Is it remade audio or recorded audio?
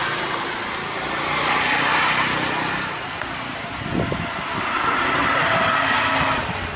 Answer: recorded